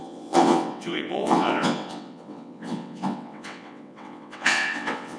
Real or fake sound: fake